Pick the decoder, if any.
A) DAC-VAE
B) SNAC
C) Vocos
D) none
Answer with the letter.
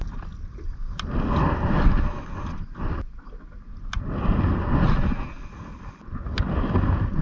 D